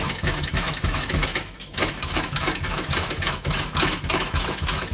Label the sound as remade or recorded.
remade